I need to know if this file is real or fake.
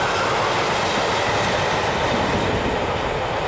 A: real